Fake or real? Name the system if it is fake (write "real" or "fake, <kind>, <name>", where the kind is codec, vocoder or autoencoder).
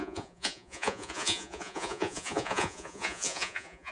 fake, vocoder, Vocos